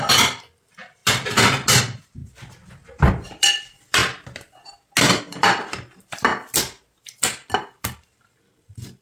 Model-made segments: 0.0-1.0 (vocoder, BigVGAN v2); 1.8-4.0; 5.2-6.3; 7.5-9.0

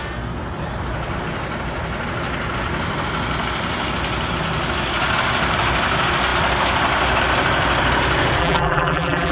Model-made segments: 8.4-9.3 (vocoder, BigVGAN v2)

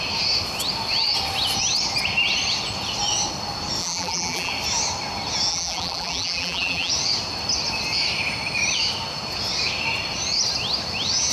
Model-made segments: 3.8-4.5 (vocoder, BigVGAN v2); 5.5-6.9

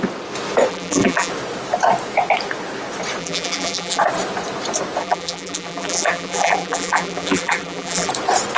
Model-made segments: 0.7-1.3 (vocoder, BigVGAN v2); 3.2-4.0; 5.0-8.1

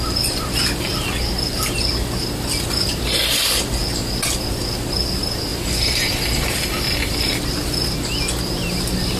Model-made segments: none